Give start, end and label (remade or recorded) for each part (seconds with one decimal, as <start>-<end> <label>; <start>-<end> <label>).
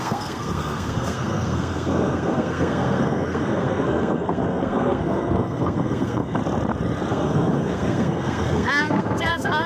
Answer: 0.0-6.4 remade; 6.4-7.1 recorded; 7.1-9.7 remade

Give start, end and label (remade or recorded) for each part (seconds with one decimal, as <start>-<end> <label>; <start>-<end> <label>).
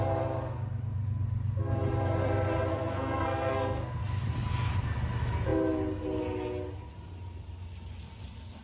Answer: 0.0-2.7 recorded; 2.7-4.0 remade; 4.0-8.6 recorded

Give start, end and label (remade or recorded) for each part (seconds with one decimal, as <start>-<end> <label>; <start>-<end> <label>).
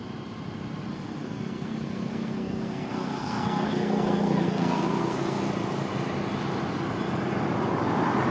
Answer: 0.0-0.9 recorded; 0.9-5.5 remade; 5.5-8.3 recorded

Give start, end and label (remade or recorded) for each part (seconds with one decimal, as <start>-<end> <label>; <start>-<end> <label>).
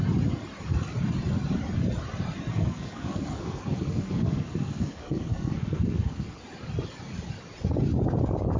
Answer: 0.0-2.5 recorded; 2.5-6.4 remade; 6.4-8.6 recorded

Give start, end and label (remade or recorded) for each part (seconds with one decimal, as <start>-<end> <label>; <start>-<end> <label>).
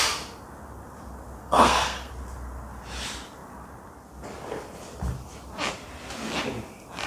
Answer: 0.0-1.4 recorded; 1.4-2.1 remade; 2.1-7.1 recorded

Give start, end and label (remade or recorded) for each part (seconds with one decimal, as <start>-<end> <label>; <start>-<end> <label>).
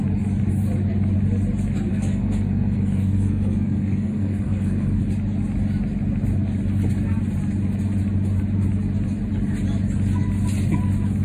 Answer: 0.0-1.9 recorded; 1.9-5.0 remade; 5.0-11.2 recorded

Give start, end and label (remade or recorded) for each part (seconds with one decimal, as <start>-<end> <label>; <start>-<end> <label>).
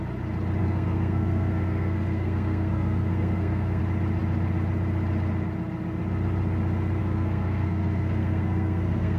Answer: 0.0-0.6 recorded; 0.6-3.8 remade; 3.8-7.0 recorded; 7.0-9.2 remade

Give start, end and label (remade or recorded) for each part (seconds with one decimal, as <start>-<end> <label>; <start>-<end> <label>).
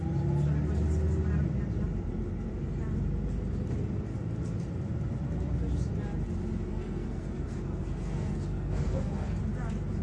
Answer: 0.0-6.7 recorded; 6.7-9.4 remade; 9.4-10.0 recorded